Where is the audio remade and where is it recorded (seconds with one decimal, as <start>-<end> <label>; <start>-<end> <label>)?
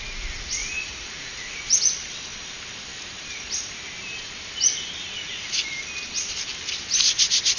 0.0-0.6 recorded; 0.6-1.7 remade; 1.7-7.6 recorded